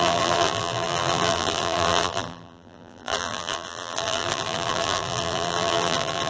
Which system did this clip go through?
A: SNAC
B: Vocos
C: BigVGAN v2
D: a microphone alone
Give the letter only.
C